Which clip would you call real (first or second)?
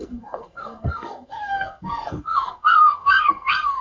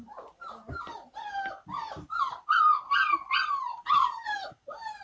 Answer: second